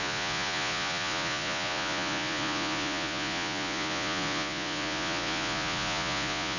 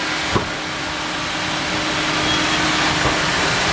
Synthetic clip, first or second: first